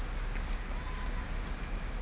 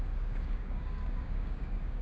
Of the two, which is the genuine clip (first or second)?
first